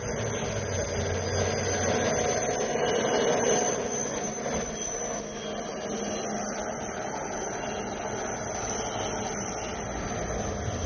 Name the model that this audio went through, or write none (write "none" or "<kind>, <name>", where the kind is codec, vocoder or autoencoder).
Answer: none